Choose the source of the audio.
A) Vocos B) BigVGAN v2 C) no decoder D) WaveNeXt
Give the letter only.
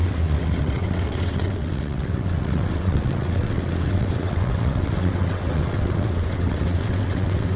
D